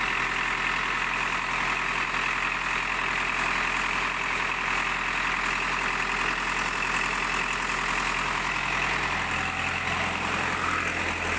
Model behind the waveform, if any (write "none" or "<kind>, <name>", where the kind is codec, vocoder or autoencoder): none